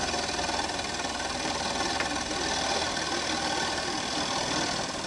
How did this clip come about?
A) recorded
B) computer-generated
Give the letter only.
B